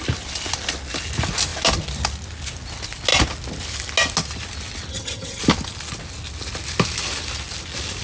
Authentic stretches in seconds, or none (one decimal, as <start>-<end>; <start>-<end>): 0.0-4.9; 5.4-8.0